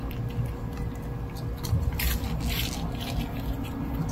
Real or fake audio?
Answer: real